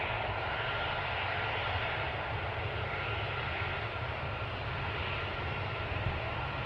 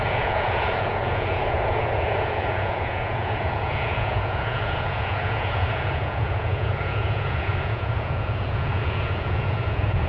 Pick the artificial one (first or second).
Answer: second